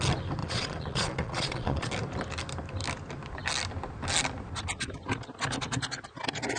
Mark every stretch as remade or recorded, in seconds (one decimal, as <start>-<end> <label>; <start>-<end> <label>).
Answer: 0.0-0.4 recorded; 0.4-1.9 remade; 1.9-6.6 recorded